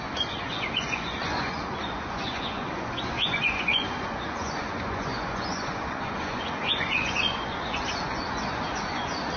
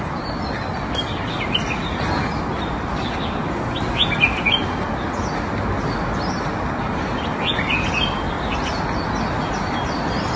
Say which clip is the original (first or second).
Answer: second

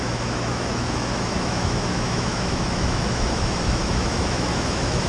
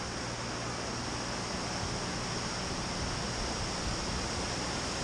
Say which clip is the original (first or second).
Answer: second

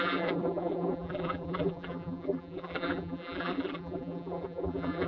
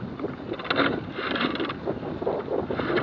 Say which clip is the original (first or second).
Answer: second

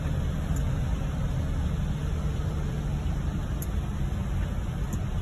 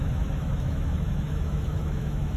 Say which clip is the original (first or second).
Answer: first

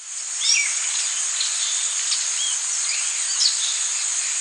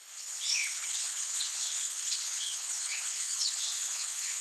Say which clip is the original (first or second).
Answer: first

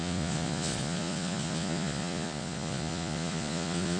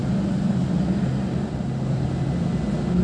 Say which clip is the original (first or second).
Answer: second